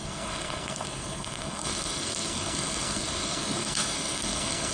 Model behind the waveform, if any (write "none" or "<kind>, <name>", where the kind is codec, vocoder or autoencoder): codec, SNAC